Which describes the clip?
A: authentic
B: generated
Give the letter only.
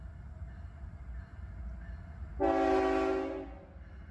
A